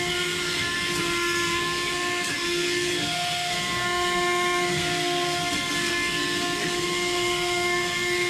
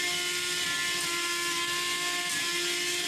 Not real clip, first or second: first